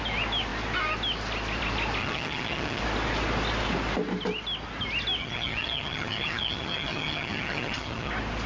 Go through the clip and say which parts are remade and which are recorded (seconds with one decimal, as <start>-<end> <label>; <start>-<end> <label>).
0.0-2.0 recorded; 2.0-2.8 remade; 2.8-5.2 recorded; 5.2-8.1 remade; 8.1-8.5 recorded